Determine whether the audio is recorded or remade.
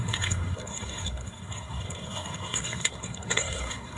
remade